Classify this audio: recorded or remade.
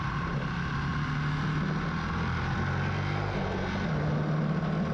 recorded